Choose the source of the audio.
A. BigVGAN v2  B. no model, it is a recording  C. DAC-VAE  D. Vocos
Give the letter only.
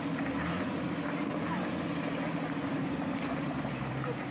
A